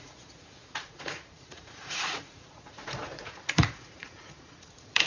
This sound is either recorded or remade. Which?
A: remade